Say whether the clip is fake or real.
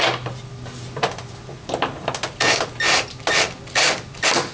real